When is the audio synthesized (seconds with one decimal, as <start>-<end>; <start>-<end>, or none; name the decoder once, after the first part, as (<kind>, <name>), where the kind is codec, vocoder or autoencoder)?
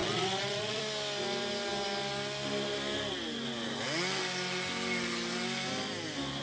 0.0-0.8 (vocoder, Vocos)